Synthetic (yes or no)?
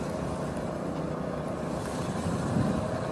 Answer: no